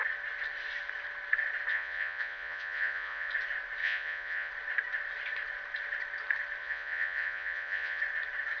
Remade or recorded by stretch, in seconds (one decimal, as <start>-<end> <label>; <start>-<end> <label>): 0.0-1.7 recorded; 1.7-3.3 remade; 3.3-3.8 recorded; 3.8-4.5 remade; 4.5-6.6 recorded; 6.6-8.0 remade; 8.0-8.6 recorded